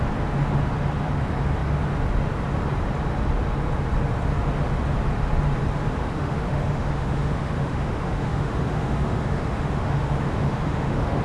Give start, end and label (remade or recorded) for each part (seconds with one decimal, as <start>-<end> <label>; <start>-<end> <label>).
0.0-6.0 recorded; 6.0-11.2 remade